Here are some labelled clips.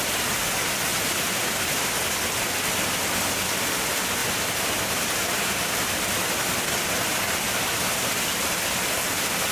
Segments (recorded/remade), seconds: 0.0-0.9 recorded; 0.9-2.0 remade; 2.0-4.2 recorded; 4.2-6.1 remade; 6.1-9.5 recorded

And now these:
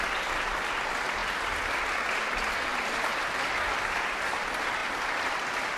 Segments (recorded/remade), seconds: 0.0-2.7 recorded; 2.7-3.5 remade; 3.5-5.8 recorded

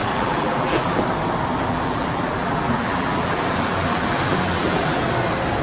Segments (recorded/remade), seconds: 0.0-1.0 remade; 1.0-1.6 recorded; 1.6-5.0 remade; 5.0-5.6 recorded

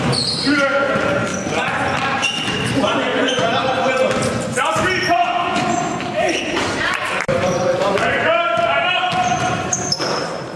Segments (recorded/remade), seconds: 0.0-1.3 remade; 1.3-2.3 recorded; 2.3-10.6 remade

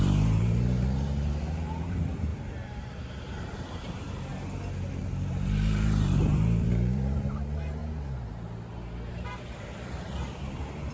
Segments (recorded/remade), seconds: 0.0-2.3 remade; 2.3-3.0 recorded; 3.0-4.3 remade; 4.3-5.0 recorded; 5.0-7.8 remade; 7.8-9.1 recorded; 9.1-10.9 remade

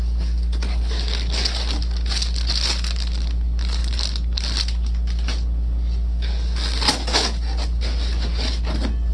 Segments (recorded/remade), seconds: 0.0-9.1 recorded

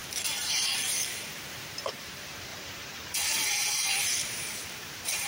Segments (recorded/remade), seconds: 0.0-5.3 remade

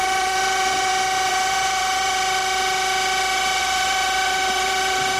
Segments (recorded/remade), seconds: 0.0-0.9 remade; 0.9-1.3 recorded; 1.3-2.1 remade; 2.1-3.6 recorded; 3.6-5.2 remade